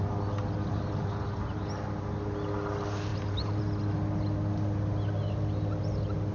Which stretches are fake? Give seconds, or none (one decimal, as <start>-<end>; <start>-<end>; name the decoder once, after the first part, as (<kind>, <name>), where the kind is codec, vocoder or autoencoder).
3.1-3.6 (vocoder, BigVGAN v2)